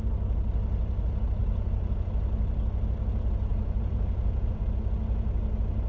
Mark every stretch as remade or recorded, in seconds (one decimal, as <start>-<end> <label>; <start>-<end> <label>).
0.0-1.4 recorded; 1.4-2.1 remade; 2.1-3.5 recorded; 3.5-4.6 remade; 4.6-5.9 recorded